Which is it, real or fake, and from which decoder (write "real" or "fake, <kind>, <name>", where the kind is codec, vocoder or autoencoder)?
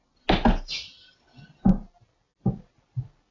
real